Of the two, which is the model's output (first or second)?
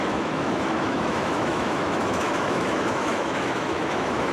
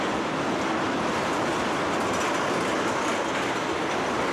first